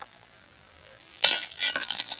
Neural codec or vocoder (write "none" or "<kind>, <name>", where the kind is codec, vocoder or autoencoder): vocoder, BigVGAN v2